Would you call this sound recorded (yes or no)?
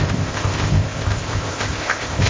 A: no